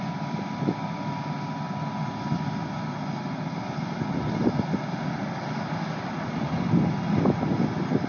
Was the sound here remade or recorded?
recorded